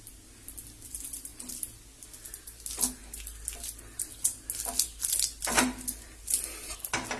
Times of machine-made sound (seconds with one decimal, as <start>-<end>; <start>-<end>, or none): none